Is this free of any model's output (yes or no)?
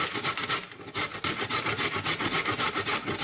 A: yes